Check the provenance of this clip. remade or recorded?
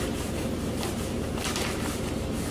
remade